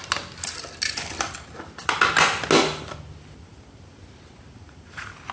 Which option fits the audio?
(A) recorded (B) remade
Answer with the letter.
A